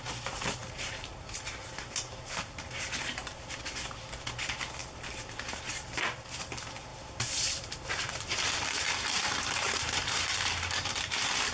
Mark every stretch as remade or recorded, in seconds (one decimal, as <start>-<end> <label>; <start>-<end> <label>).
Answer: 0.0-0.6 recorded; 0.6-3.6 remade; 3.6-6.9 recorded; 6.9-10.7 remade; 10.7-11.5 recorded